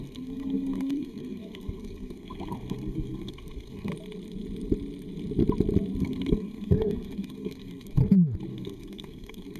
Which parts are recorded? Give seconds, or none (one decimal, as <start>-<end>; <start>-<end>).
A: 3.9-6.0; 8.0-8.5